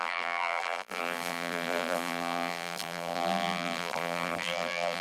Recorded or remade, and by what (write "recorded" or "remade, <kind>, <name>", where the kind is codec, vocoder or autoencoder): remade, vocoder, BigVGAN v2